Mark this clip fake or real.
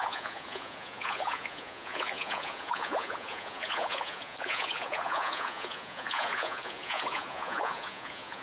fake